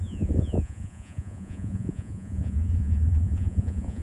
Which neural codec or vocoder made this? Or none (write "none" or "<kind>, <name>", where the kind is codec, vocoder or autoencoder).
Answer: vocoder, Vocos